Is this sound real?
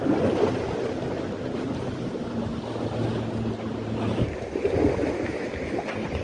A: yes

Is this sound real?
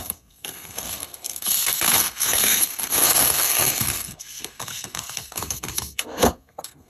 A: no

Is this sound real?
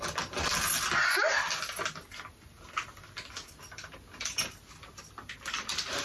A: yes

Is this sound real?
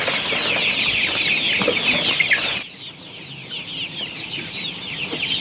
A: yes